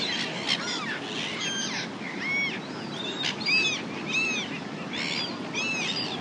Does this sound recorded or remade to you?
recorded